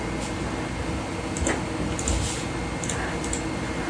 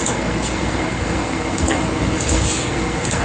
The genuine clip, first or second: first